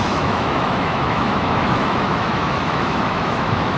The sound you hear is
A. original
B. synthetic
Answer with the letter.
B